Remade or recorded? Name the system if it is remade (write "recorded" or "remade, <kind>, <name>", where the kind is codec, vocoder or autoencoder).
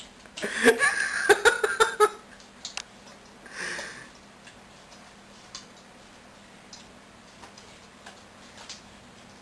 recorded